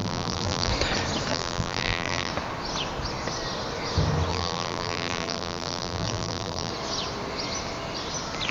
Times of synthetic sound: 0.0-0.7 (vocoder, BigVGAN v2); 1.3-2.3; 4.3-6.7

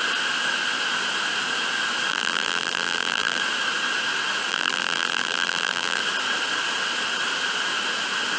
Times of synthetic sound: 2.1-3.4 (vocoder, BigVGAN v2); 4.5-6.0

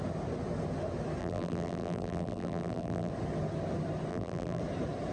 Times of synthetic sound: 1.2-3.1 (vocoder, BigVGAN v2); 4.1-4.6

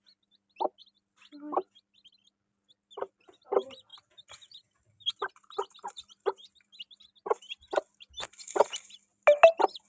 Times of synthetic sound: none

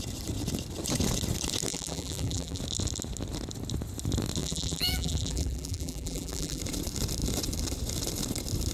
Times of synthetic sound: 1.7-2.6 (vocoder, BigVGAN v2); 4.4-6.6

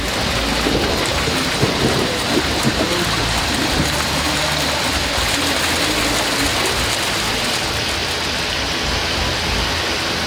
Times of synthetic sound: 1.1-2.8 (vocoder, BigVGAN v2); 3.2-3.8; 6.5-7.4

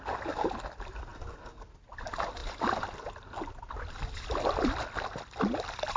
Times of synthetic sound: 0.0-1.1 (vocoder, BigVGAN v2); 2.0-6.0